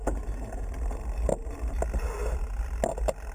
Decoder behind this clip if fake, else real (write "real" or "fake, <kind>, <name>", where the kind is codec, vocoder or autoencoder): real